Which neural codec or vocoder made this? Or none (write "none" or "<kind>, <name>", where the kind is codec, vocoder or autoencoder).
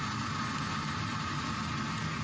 none